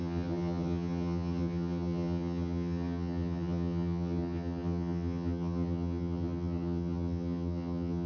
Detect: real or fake fake